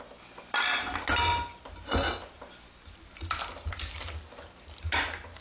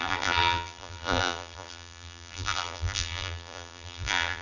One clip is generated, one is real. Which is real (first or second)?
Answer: first